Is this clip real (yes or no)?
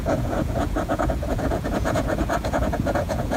no